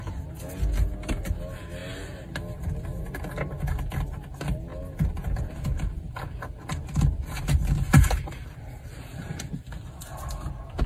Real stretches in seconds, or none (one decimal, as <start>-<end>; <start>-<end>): 0.0-10.9

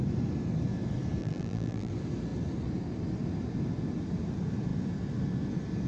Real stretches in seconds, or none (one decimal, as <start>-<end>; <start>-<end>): 0.0-1.2; 1.9-5.9

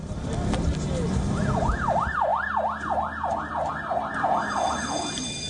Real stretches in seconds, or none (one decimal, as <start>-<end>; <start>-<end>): 0.0-5.5

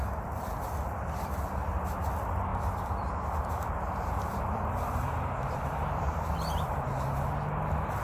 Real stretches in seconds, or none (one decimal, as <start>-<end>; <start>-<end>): 0.0-2.5; 7.2-8.0

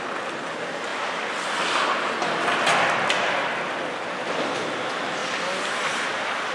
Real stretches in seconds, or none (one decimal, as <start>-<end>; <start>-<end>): 0.0-6.5

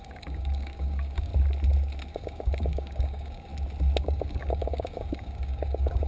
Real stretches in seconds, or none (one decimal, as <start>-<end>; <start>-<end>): 1.3-2.1; 3.5-4.0

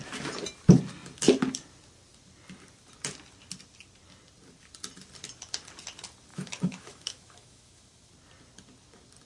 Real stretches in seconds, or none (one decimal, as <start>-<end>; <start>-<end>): 0.0-6.3; 8.1-9.3

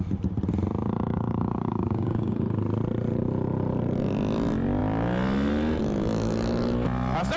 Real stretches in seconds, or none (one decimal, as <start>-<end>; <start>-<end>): 0.0-1.1; 2.4-7.4